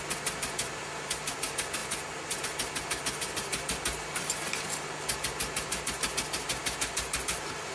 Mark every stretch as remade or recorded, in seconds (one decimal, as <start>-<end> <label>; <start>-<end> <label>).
0.0-7.7 recorded